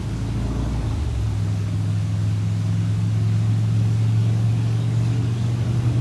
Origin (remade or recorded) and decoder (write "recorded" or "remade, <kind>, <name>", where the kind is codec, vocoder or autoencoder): remade, codec, DAC